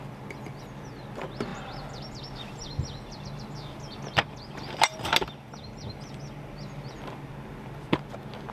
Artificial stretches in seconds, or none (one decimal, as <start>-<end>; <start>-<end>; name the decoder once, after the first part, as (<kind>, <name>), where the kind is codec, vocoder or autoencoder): none